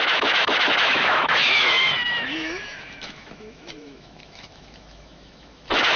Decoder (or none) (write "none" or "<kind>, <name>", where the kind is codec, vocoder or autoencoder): autoencoder, DAC-VAE